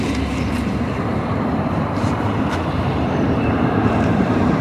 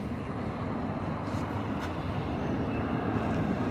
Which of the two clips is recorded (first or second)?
second